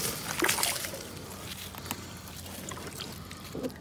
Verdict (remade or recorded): recorded